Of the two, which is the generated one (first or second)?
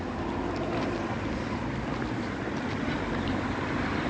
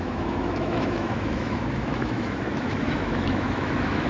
second